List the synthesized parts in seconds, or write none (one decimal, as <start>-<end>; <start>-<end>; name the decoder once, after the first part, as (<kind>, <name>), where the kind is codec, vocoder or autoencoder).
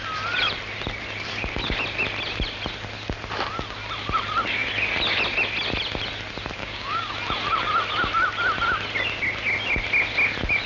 6.6-7.1 (codec, DAC)